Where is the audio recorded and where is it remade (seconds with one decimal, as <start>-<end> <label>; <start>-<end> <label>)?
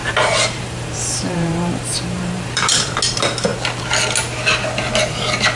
0.0-3.0 remade; 3.0-5.6 recorded